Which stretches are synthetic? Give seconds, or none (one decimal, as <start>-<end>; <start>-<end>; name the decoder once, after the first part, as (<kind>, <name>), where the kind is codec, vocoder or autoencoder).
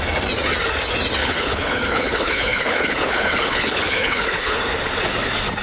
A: 1.2-4.6 (codec, HILCodec)